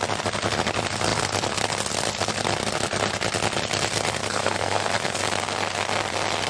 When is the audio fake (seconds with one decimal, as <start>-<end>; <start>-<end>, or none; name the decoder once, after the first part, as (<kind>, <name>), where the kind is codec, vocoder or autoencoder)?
4.2-5.2 (codec, SNAC)